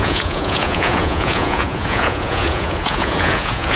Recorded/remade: remade